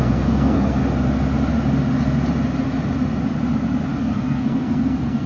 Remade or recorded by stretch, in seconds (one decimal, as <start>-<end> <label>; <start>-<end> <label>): 0.0-0.8 remade; 0.8-4.0 recorded; 4.0-5.3 remade

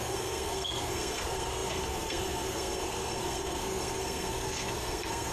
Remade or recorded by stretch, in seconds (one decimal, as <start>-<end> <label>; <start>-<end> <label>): 0.0-5.3 remade

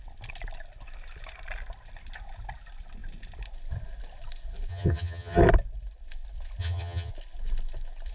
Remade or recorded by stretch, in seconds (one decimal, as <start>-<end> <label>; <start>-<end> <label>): 0.0-4.7 recorded; 4.7-5.4 remade; 5.4-6.6 recorded; 6.6-7.1 remade; 7.1-8.1 recorded

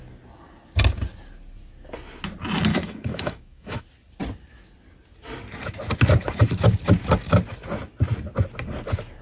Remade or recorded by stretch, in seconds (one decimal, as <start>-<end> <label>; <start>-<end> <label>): 0.0-2.7 recorded; 2.7-3.8 remade; 3.8-9.2 recorded